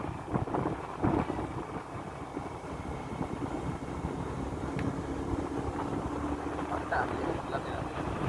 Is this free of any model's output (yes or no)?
yes